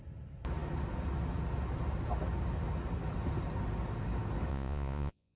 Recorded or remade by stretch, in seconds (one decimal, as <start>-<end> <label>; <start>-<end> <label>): 0.0-4.5 recorded; 4.5-5.4 remade